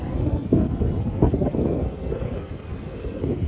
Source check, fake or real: fake